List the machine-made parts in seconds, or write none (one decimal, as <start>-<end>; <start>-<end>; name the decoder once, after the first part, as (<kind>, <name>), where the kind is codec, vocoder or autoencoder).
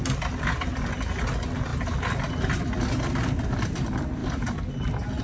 none